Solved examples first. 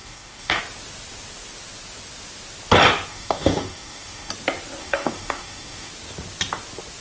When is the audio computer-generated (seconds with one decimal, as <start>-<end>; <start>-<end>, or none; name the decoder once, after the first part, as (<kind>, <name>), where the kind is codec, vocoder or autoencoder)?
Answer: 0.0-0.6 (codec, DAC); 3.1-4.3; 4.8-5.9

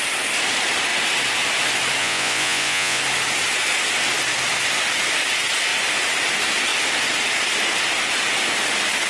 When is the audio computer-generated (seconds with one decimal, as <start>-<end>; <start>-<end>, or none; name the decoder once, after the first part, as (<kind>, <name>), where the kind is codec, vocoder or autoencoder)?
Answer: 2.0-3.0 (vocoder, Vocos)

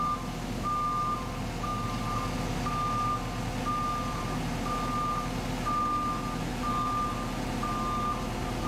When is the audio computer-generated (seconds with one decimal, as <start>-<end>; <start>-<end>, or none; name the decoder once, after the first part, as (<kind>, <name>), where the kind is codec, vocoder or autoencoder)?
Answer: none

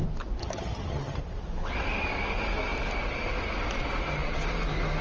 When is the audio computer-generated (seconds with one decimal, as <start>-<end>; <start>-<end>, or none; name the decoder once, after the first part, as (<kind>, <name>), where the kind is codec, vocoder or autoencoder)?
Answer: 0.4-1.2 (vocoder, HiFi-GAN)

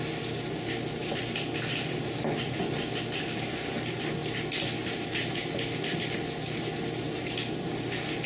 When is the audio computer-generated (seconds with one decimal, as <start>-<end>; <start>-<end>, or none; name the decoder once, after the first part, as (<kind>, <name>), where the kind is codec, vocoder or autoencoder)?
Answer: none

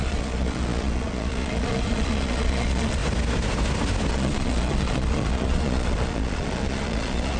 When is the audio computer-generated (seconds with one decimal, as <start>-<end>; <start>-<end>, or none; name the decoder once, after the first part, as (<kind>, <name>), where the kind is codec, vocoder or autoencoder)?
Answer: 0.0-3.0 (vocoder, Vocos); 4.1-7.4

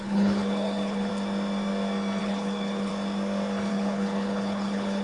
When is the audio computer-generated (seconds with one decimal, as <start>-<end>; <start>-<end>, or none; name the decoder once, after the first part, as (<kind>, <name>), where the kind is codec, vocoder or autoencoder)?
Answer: 0.0-1.1 (codec, HILCodec); 2.2-2.9; 3.7-5.0

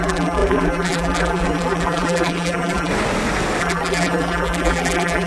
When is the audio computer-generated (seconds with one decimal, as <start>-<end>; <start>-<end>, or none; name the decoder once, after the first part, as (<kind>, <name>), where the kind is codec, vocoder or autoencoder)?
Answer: 0.0-2.9 (vocoder, BigVGAN v2); 3.6-5.3